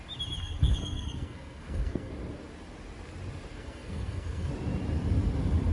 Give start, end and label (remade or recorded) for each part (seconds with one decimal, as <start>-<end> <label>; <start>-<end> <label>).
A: 0.0-0.4 recorded; 0.4-2.1 remade; 2.1-3.5 recorded; 3.5-4.5 remade; 4.5-5.7 recorded